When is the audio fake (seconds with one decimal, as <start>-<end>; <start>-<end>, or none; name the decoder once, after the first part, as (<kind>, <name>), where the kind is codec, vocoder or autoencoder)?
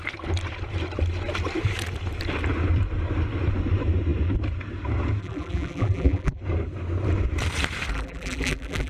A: 5.2-6.4 (vocoder, BigVGAN v2); 7.9-8.9